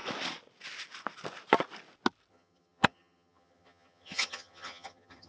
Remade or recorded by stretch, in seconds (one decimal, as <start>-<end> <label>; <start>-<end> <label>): 0.0-2.3 recorded; 2.3-5.3 remade